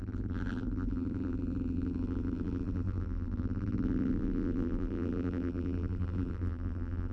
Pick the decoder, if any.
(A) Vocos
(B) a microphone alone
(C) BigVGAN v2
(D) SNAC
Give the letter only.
C